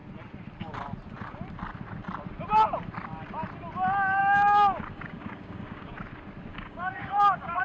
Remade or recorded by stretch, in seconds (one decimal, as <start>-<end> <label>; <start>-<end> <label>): 0.0-4.2 recorded; 4.2-5.9 remade; 5.9-6.5 recorded; 6.5-7.6 remade